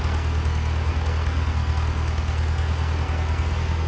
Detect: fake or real fake